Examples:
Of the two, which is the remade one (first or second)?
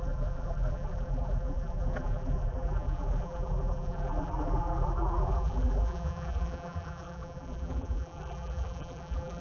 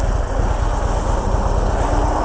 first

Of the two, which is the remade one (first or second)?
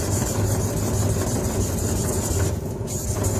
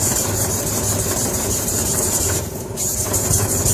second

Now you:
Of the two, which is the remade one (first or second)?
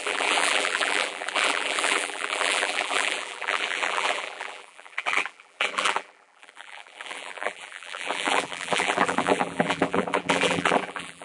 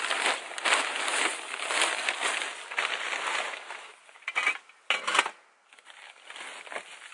first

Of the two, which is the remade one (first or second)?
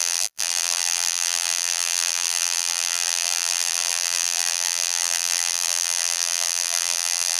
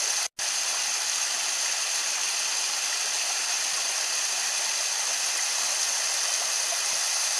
first